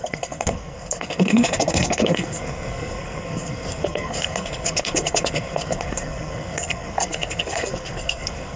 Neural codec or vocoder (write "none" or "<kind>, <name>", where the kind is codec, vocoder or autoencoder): codec, SNAC